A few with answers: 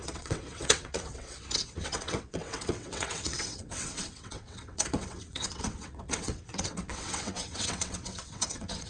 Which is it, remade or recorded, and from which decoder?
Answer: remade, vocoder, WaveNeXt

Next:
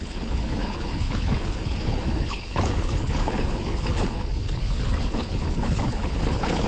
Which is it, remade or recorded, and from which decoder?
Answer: remade, codec, HILCodec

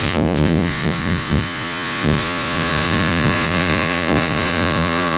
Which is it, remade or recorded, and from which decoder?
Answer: remade, vocoder, Vocos